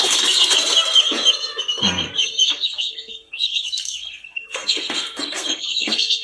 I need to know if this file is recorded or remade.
remade